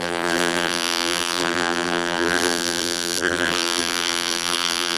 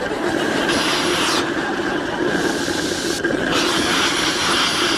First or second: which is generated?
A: first